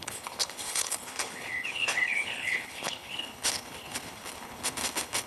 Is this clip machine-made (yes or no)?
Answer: yes